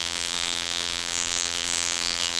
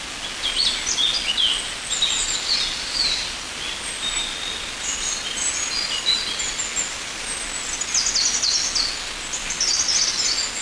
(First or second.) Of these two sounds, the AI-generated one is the first